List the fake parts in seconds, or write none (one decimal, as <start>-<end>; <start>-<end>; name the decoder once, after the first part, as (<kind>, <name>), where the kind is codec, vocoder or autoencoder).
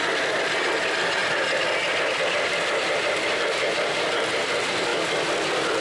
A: none